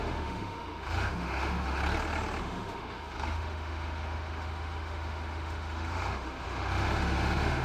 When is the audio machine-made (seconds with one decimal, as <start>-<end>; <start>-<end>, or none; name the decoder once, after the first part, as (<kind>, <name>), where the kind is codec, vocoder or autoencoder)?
0.0-1.8 (autoencoder, DAC-VAE); 2.4-7.6